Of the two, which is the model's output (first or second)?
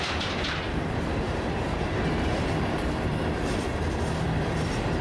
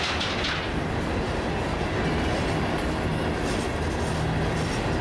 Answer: first